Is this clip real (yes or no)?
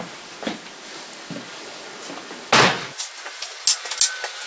yes